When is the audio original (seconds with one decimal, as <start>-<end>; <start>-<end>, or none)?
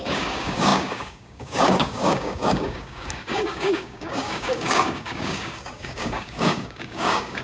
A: none